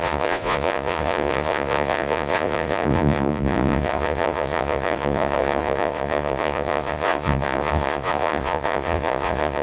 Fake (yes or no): yes